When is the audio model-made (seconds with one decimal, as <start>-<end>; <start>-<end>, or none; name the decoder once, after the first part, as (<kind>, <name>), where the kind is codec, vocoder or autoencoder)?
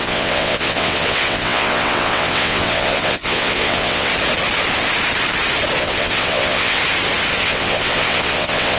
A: 0.0-4.1 (vocoder, WaveNeXt); 5.8-6.8; 7.4-8.8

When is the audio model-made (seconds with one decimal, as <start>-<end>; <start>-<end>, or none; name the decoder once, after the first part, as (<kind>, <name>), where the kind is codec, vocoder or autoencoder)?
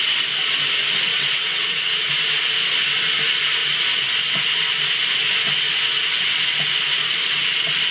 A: 1.1-2.1 (vocoder, WaveNeXt)